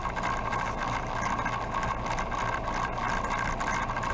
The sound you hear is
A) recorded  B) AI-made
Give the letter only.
A